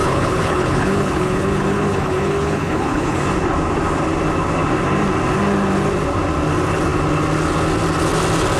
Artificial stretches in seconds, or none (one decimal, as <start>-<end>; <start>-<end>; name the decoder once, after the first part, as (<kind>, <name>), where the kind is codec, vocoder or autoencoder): 0.0-3.2 (codec, HILCodec)